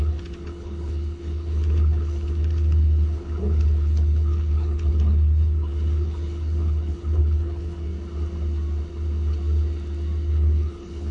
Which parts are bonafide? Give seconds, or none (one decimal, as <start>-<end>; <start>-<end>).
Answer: 7.9-10.3